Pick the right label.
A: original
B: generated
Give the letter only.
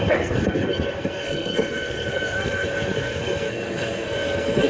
B